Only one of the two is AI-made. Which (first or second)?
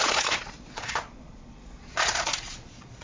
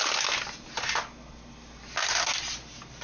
first